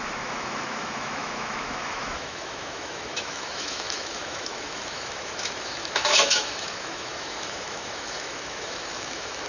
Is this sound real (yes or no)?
no